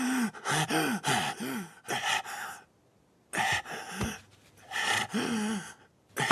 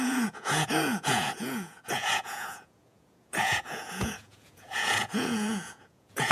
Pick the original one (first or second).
first